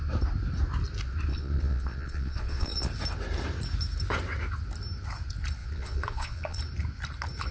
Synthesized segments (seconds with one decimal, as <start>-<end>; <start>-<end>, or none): 1.3-2.9; 5.6-6.6